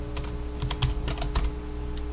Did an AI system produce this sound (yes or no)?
no